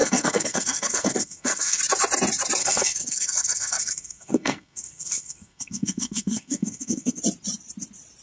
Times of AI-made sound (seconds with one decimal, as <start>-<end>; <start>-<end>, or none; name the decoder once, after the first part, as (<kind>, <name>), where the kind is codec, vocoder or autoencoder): 0.0-1.8 (codec, SNAC); 2.6-7.2